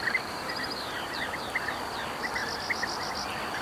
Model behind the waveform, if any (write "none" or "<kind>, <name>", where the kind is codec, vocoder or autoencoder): none